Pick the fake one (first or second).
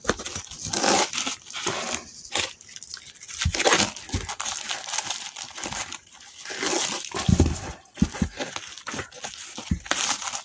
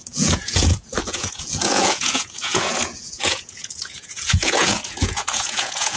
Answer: second